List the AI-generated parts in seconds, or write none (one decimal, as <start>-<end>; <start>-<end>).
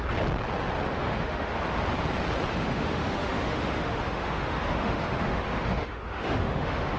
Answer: 0.9-1.5; 2.5-7.0